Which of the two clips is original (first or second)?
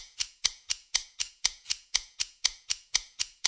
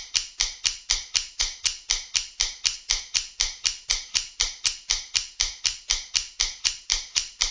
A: second